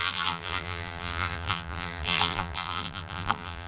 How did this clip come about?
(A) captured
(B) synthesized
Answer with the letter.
B